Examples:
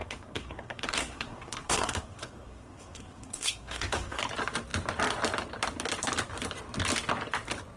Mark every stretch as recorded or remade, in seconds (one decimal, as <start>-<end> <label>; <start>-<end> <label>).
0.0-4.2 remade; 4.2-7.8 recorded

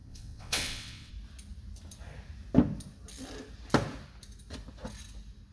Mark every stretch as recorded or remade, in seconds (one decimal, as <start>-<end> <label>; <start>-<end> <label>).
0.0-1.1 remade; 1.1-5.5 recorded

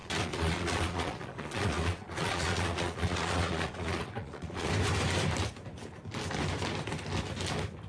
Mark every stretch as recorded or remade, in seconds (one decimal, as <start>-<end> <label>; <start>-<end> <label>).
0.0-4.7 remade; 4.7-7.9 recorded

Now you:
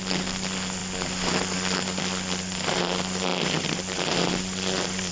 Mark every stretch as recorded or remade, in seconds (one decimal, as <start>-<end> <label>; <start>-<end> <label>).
0.0-5.1 recorded